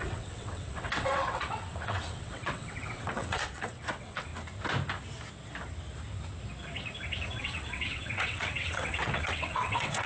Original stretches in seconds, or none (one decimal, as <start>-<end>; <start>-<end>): 4.3-7.4

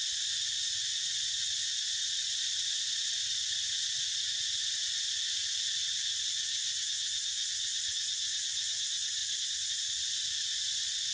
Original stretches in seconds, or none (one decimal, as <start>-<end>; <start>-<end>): 0.0-11.1

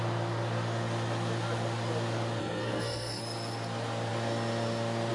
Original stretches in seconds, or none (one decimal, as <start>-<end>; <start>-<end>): 0.0-2.4; 3.2-5.1

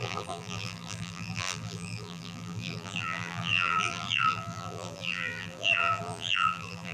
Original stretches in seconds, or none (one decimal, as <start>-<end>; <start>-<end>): none

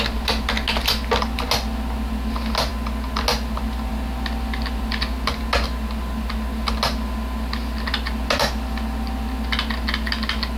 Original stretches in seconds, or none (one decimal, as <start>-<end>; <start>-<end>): 0.0-10.6